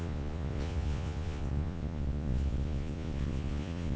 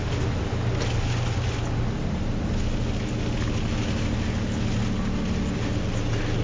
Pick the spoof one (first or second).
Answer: first